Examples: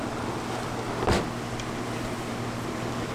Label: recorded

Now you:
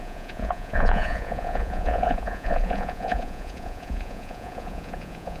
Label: remade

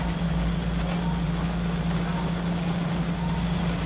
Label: recorded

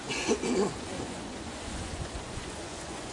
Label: remade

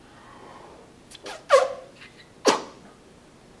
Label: recorded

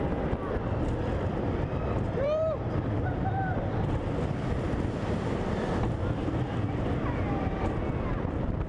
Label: remade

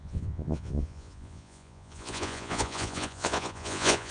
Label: remade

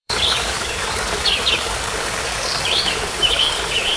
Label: remade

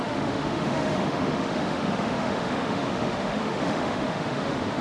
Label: remade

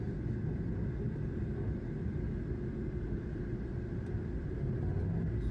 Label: recorded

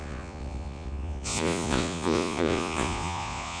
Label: remade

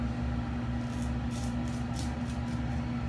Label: recorded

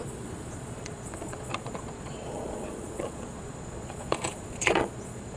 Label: remade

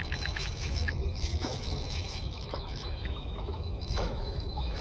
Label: remade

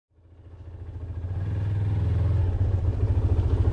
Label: recorded